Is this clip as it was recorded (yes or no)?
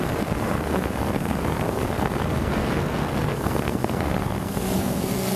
no